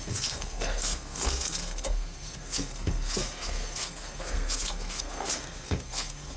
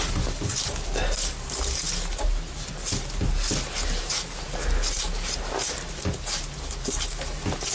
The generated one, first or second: first